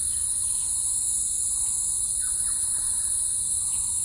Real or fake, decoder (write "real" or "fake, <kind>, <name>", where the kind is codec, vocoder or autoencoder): real